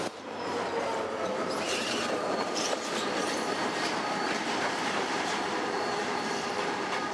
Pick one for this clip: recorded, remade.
remade